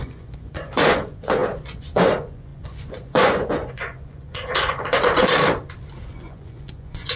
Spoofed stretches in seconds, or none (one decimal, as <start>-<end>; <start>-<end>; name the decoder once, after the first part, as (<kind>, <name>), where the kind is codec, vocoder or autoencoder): 0.0-5.2 (vocoder, Vocos); 6.1-7.2